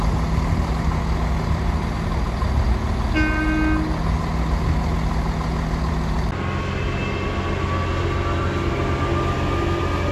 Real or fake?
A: real